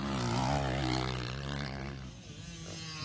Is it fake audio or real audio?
real